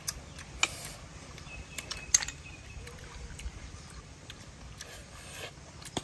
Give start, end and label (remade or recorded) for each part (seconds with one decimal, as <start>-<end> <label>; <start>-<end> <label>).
0.0-1.1 recorded; 1.1-4.6 remade; 4.6-5.0 recorded; 5.0-6.0 remade